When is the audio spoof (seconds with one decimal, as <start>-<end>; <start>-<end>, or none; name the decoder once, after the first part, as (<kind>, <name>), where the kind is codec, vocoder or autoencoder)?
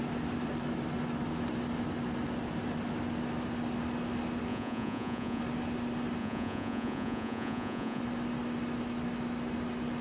4.5-5.4 (vocoder, Vocos); 6.2-8.0